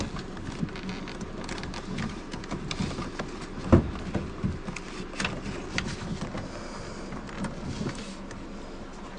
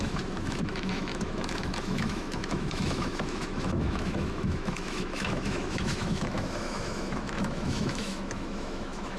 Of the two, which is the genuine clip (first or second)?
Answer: first